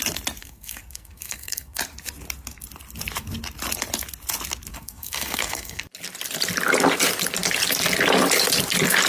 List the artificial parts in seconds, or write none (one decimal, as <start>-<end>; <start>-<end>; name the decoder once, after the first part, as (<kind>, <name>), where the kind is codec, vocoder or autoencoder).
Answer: 0.4-1.8 (codec, SNAC); 4.7-5.8